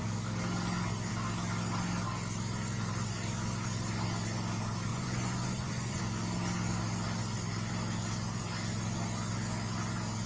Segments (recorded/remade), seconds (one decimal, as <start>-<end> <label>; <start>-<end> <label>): 0.0-4.9 recorded; 4.9-6.0 remade; 6.0-10.3 recorded